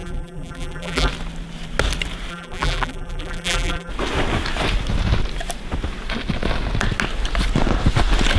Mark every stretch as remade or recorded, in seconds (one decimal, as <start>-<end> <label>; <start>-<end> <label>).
0.0-1.1 remade; 1.1-2.3 recorded; 2.3-3.9 remade; 3.9-8.4 recorded